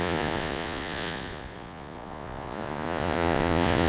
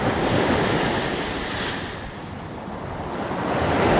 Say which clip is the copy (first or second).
first